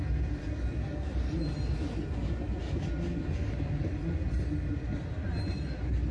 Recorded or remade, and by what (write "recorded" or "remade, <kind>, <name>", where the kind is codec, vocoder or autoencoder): recorded